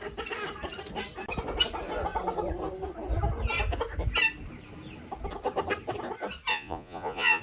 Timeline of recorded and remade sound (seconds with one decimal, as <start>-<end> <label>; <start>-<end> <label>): 0.0-6.5 recorded; 6.5-7.4 remade